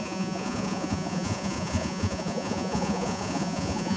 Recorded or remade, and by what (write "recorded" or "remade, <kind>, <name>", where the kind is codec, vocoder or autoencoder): remade, vocoder, Vocos